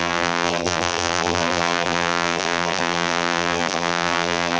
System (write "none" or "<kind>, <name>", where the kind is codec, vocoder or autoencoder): vocoder, BigVGAN v2